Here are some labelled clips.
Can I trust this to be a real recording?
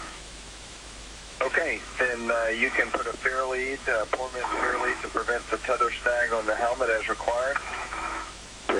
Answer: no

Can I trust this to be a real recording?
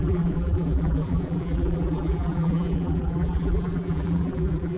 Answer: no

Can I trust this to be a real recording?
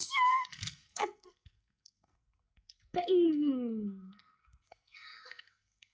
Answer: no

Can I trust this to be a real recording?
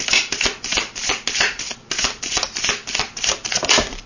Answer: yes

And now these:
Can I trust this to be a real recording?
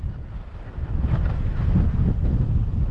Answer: yes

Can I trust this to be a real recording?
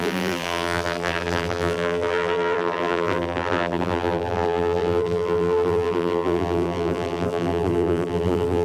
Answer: no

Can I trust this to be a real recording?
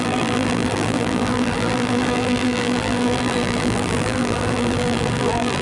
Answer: no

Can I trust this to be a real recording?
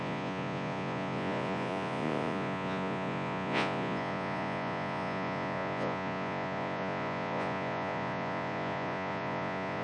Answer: no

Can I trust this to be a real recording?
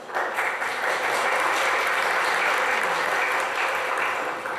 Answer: yes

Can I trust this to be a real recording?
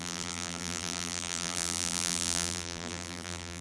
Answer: no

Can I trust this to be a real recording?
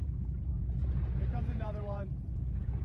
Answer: no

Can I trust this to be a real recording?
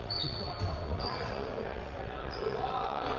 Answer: no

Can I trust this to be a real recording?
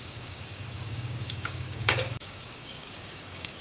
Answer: no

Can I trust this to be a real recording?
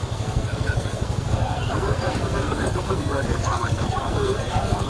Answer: no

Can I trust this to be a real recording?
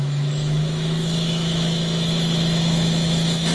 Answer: no